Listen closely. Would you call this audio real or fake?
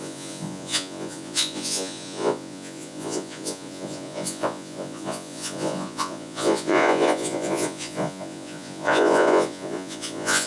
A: fake